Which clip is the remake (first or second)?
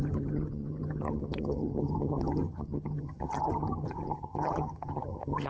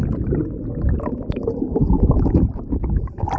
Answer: first